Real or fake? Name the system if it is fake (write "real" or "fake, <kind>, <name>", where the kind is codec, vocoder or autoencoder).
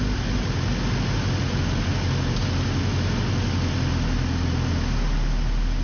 real